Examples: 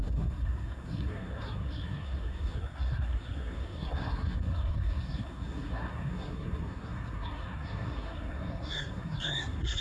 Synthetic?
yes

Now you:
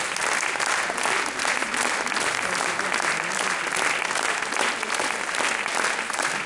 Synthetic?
no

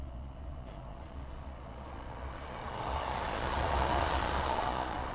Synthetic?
yes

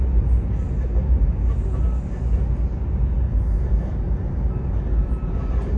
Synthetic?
no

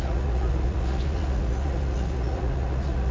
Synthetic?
yes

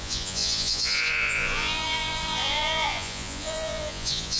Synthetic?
yes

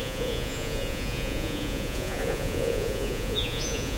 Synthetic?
yes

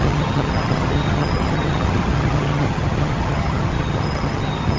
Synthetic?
yes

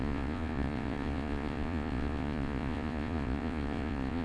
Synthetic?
yes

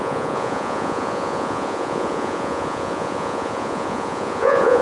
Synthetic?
yes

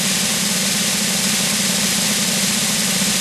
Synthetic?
yes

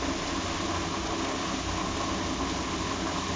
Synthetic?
no